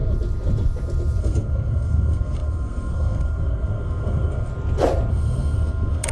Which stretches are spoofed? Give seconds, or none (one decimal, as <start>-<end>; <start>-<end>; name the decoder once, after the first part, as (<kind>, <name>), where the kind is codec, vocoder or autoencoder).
1.2-4.5 (codec, SNAC); 5.1-6.1